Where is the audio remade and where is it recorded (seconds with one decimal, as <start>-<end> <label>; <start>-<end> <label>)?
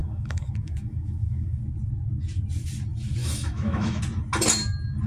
0.0-1.6 remade; 1.6-3.2 recorded; 3.2-4.0 remade; 4.0-5.1 recorded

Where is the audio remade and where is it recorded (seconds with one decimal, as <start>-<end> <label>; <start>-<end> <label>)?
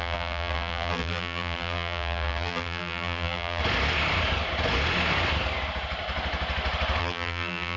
0.0-3.6 remade; 3.6-7.0 recorded; 7.0-7.8 remade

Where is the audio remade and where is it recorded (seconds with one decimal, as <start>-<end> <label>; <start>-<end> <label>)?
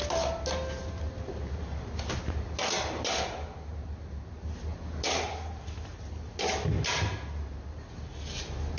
0.0-8.8 recorded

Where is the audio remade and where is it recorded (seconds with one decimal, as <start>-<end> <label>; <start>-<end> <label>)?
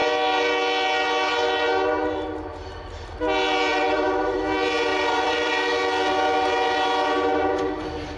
0.0-3.7 recorded; 3.7-4.4 remade; 4.4-4.9 recorded; 4.9-5.5 remade; 5.5-8.2 recorded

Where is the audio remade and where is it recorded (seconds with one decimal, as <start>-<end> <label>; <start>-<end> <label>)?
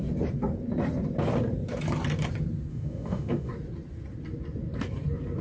0.0-2.7 recorded; 2.7-3.5 remade; 3.5-5.4 recorded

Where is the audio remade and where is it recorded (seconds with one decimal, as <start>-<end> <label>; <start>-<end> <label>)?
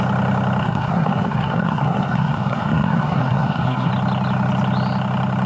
0.0-0.6 recorded; 0.6-3.9 remade; 3.9-5.5 recorded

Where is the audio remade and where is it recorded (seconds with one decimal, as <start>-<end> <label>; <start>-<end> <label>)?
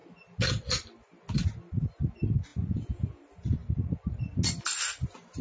0.0-2.5 recorded; 2.5-3.2 remade; 3.2-5.4 recorded